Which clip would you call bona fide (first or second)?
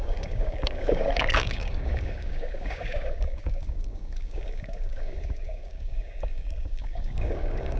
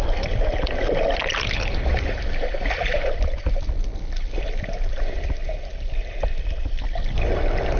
second